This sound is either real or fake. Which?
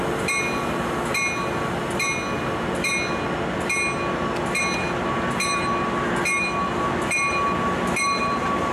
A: real